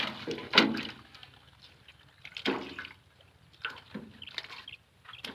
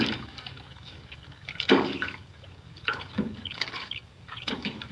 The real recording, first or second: first